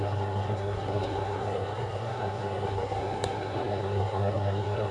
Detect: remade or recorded remade